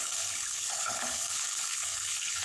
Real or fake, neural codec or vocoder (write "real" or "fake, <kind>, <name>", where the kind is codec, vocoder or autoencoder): fake, codec, HILCodec